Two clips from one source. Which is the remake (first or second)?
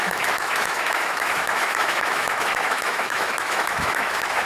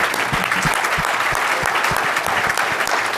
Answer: first